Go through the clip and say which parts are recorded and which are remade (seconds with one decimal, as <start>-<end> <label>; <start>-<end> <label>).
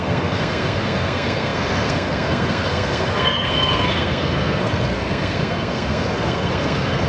0.0-7.1 remade